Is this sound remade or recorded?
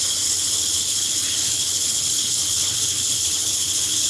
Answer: remade